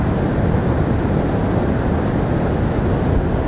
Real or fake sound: real